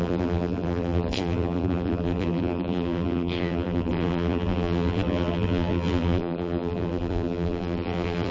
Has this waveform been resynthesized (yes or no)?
yes